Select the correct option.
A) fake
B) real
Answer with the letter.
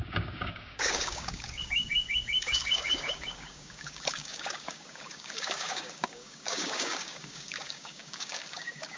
A